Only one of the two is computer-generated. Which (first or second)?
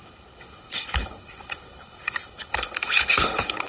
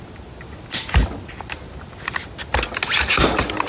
first